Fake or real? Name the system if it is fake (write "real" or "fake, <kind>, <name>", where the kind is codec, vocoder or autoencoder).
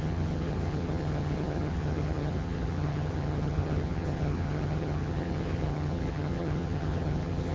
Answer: fake, vocoder, HiFi-GAN